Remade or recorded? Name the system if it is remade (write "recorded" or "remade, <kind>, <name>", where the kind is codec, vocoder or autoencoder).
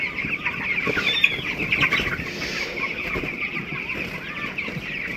recorded